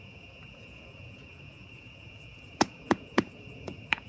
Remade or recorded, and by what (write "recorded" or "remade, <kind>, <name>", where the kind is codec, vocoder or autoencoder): remade, vocoder, Vocos